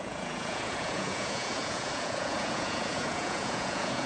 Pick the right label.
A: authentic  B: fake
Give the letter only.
B